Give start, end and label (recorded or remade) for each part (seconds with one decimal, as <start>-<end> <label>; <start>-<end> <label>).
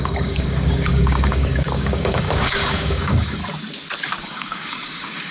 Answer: 0.0-3.4 remade; 3.4-4.2 recorded; 4.2-5.3 remade